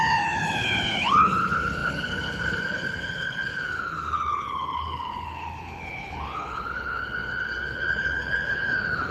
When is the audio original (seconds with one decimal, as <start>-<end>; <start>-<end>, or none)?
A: none